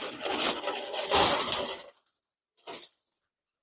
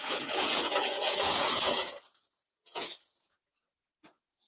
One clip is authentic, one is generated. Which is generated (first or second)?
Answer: second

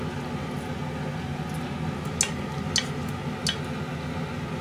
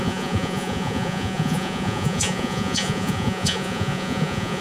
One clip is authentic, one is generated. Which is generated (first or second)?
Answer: second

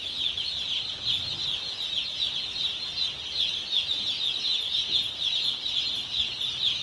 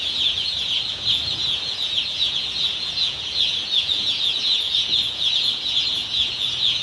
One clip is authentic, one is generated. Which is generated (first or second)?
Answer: second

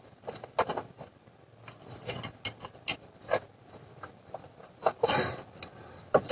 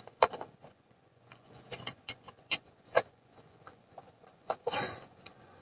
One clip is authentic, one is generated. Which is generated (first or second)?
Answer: second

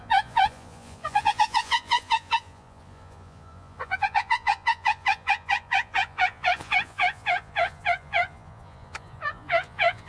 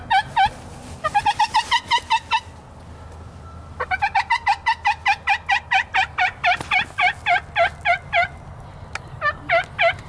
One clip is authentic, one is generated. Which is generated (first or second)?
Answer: first